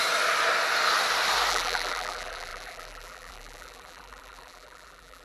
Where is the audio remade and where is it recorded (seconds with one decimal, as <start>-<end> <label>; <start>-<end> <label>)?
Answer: 0.0-1.5 recorded; 1.5-5.2 remade